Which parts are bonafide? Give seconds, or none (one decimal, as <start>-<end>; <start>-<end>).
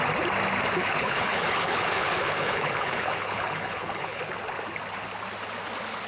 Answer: 0.0-0.8; 4.2-6.1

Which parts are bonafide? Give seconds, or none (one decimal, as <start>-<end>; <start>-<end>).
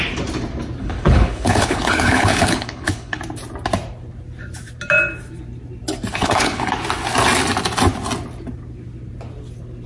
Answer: 0.0-0.8; 3.2-6.1; 6.7-9.9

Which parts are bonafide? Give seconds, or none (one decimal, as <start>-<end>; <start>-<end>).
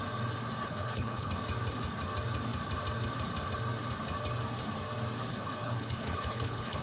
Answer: 0.0-0.6; 1.3-5.3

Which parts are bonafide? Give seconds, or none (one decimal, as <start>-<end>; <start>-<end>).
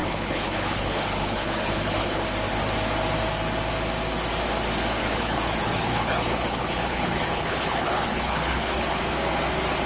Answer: 2.2-5.0; 9.0-9.9